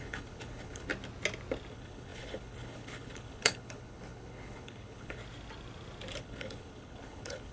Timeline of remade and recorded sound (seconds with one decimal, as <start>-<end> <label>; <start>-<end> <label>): 0.0-0.9 remade; 0.9-1.7 recorded; 1.7-5.2 remade; 5.2-6.2 recorded; 6.2-7.5 remade